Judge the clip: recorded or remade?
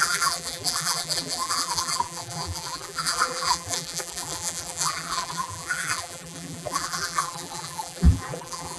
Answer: remade